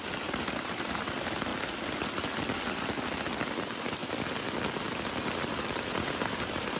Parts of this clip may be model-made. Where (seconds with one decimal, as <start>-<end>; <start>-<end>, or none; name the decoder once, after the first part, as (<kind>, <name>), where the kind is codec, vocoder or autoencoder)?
0.0-1.5 (vocoder, BigVGAN v2); 3.5-4.0; 6.0-6.8